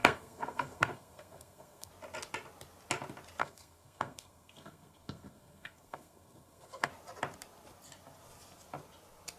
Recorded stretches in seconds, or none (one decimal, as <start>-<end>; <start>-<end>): 1.9-3.4; 6.9-9.4